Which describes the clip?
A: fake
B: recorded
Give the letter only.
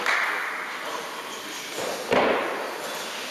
B